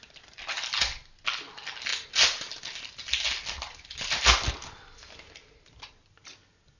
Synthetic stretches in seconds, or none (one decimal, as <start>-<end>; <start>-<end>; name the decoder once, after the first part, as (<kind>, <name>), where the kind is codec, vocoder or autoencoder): none